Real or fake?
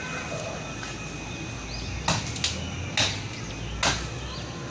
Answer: real